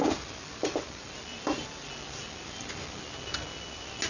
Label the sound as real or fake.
real